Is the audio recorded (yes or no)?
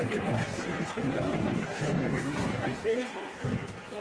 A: no